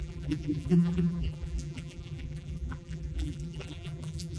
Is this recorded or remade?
remade